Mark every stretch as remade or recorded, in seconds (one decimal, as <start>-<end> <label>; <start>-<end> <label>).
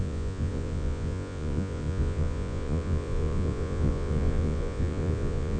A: 0.0-5.6 remade